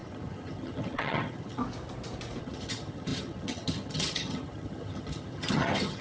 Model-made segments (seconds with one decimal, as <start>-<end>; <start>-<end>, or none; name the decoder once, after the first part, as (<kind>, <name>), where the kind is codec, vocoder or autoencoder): 0.0-1.6 (vocoder, HiFi-GAN); 2.4-6.0